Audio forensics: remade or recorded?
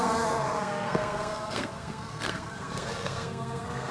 remade